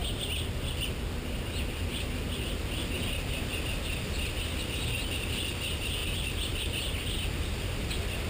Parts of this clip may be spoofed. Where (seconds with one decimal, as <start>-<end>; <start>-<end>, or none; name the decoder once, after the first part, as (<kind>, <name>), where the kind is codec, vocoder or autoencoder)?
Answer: 6.0-6.6 (vocoder, BigVGAN v2)